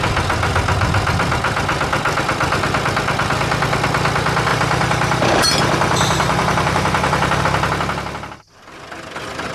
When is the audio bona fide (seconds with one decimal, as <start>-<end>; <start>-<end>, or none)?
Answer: 0.0-4.5; 7.4-9.5